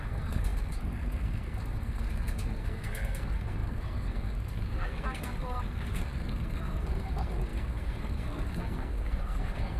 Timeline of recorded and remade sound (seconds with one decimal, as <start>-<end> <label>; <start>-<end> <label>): 0.0-9.8 remade